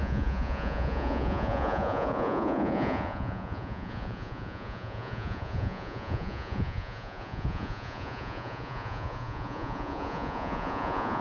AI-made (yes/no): yes